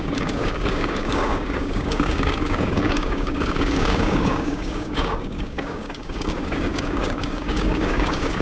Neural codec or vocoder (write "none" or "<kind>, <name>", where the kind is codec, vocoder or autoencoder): codec, DAC